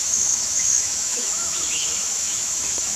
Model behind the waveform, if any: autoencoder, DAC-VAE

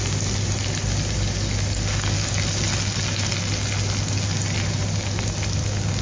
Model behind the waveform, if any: none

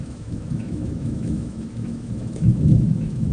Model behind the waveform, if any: autoencoder, DAC-VAE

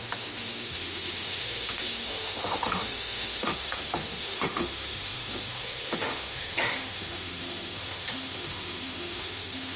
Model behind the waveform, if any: autoencoder, DAC-VAE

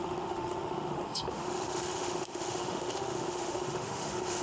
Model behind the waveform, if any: autoencoder, DAC-VAE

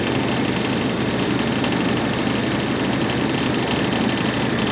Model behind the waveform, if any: none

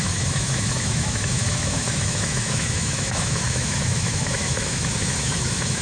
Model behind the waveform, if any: autoencoder, DAC-VAE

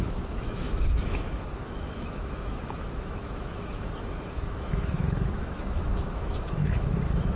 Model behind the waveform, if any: autoencoder, DAC-VAE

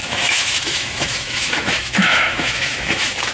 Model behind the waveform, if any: autoencoder, DAC-VAE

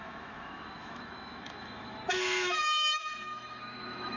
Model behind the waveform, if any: autoencoder, DAC-VAE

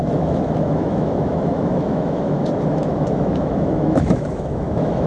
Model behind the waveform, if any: autoencoder, DAC-VAE